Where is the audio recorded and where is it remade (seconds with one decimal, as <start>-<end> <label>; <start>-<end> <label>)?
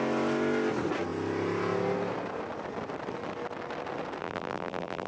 0.0-4.2 recorded; 4.2-5.1 remade